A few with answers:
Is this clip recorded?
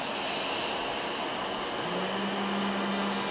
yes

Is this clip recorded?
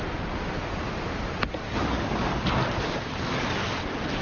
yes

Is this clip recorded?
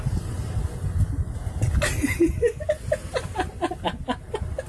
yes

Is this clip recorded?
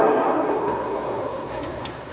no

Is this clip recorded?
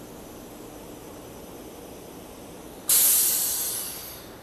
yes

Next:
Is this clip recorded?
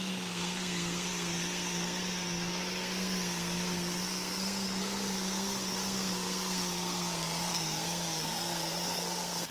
no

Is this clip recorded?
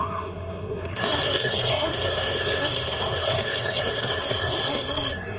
no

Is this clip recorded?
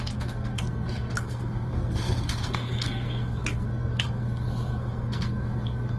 no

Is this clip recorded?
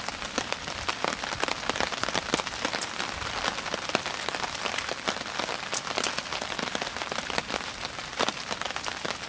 yes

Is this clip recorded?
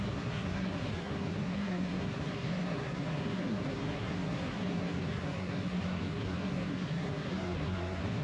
no